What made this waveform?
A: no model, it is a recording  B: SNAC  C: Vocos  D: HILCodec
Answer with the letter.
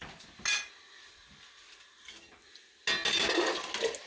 A